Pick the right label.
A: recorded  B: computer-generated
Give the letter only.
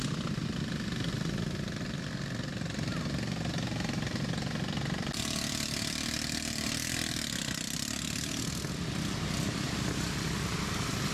A